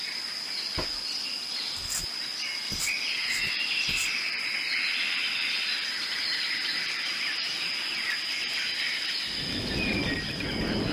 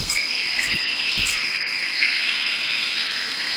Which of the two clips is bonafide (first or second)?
first